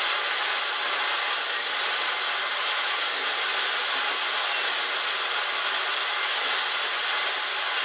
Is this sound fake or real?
real